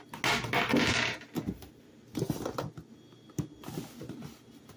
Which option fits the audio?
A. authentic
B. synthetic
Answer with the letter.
A